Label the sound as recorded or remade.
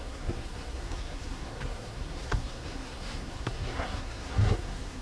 remade